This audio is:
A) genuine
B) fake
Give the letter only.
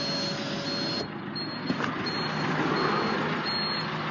A